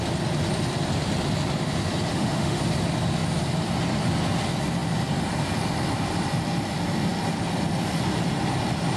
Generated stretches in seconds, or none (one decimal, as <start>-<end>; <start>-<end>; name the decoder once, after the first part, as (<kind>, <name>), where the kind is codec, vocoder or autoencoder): 2.1-2.6 (autoencoder, DAC-VAE)